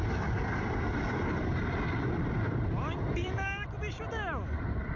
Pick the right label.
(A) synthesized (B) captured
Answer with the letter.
A